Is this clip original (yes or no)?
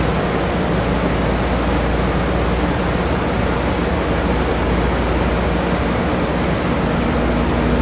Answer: yes